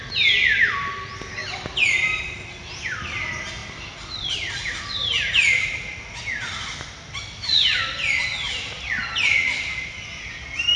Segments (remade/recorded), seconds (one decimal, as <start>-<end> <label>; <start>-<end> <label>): 0.0-1.4 recorded; 1.4-2.2 remade; 2.2-3.6 recorded; 3.6-4.5 remade; 4.5-10.8 recorded